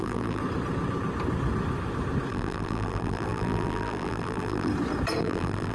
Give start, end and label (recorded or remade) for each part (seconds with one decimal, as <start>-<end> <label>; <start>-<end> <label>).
0.0-0.4 remade; 0.4-2.3 recorded; 2.3-4.7 remade; 4.7-5.2 recorded; 5.2-5.7 remade